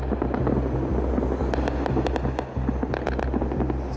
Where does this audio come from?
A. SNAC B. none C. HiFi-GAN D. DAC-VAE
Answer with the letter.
B